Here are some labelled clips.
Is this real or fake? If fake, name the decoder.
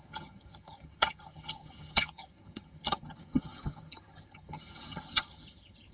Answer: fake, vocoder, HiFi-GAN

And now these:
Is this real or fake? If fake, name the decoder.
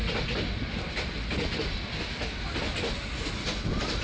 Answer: real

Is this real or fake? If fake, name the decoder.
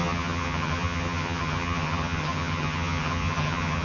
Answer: fake, vocoder, HiFi-GAN